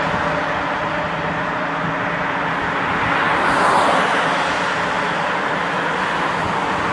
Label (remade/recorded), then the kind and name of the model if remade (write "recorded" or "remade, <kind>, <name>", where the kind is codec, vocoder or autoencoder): recorded